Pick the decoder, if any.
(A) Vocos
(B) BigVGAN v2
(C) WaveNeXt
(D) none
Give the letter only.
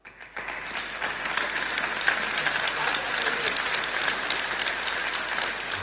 D